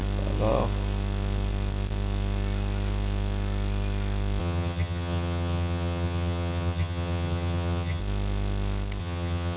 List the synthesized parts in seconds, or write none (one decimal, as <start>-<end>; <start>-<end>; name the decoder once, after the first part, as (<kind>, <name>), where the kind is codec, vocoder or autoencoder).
4.4-8.0 (vocoder, HiFi-GAN); 9.0-9.6

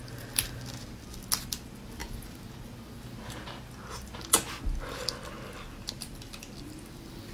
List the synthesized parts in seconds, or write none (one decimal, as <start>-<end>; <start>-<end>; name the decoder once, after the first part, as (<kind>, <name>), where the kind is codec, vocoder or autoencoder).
none

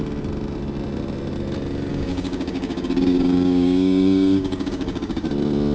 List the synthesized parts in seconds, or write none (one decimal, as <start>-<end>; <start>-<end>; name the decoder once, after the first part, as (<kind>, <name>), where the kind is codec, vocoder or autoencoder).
1.9-5.3 (codec, DAC)

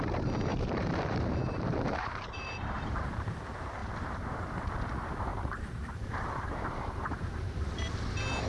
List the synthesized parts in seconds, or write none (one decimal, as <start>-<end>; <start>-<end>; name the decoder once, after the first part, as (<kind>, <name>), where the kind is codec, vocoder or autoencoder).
0.5-3.4 (vocoder, BigVGAN v2); 3.8-4.6; 5.3-7.9